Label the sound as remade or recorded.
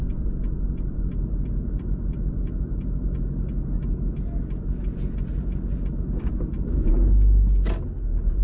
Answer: recorded